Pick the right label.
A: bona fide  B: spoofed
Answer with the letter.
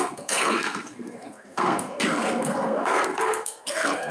B